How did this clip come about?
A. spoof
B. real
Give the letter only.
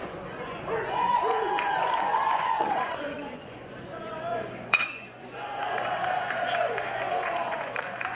A